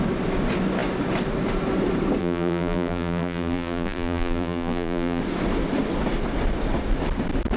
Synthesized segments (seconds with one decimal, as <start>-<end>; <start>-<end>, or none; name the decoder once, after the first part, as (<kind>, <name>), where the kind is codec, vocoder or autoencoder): 2.2-5.2 (vocoder, BigVGAN v2)